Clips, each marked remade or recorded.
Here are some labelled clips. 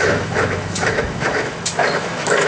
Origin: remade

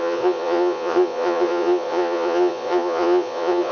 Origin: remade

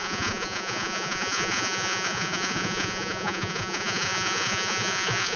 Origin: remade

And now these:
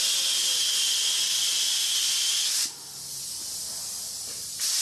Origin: recorded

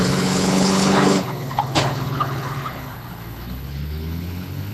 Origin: remade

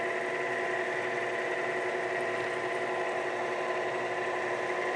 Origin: recorded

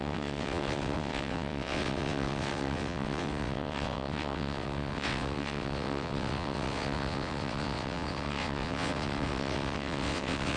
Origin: remade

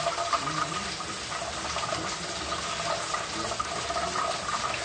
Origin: recorded